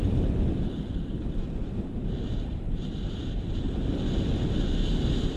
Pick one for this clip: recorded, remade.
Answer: recorded